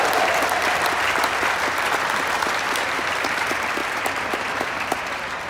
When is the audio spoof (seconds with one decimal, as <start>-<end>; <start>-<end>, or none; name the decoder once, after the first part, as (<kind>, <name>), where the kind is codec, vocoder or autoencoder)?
none